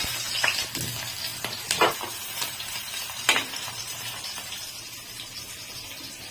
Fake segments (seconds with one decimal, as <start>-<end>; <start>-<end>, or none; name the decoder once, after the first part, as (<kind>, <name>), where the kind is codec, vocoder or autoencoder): 1.3-4.7 (vocoder, BigVGAN v2)